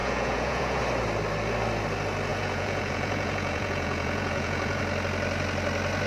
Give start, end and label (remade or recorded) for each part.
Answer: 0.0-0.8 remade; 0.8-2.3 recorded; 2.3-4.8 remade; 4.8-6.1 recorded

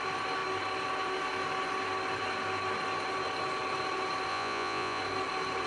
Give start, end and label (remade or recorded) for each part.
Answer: 0.0-4.3 recorded; 4.3-5.0 remade; 5.0-5.7 recorded

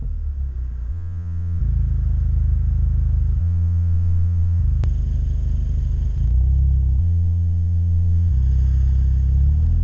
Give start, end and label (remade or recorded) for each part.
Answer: 0.0-0.9 recorded; 0.9-1.6 remade; 1.6-3.4 recorded; 3.4-4.6 remade; 4.6-7.0 recorded; 7.0-8.3 remade; 8.3-9.8 recorded

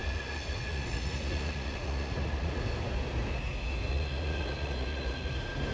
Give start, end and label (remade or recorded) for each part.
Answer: 0.0-2.6 remade; 2.6-3.9 recorded; 3.9-5.3 remade; 5.3-5.7 recorded

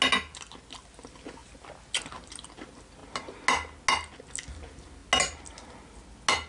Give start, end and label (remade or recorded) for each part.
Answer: 0.0-6.5 recorded

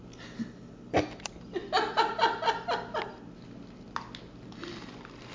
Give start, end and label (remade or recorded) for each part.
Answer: 0.0-5.3 recorded